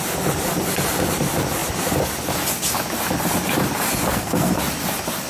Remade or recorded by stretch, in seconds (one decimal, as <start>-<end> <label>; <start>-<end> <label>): 0.0-4.1 recorded; 4.1-4.6 remade; 4.6-5.3 recorded